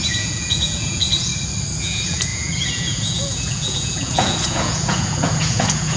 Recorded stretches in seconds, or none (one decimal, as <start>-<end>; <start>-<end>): 1.3-1.8